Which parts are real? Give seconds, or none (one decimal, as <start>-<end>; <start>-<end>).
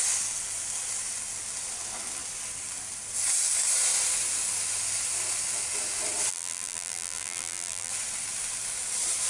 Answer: 0.0-6.3; 7.9-9.3